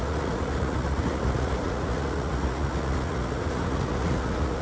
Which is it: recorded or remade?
remade